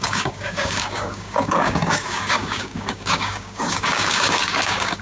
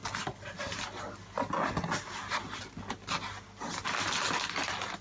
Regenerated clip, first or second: first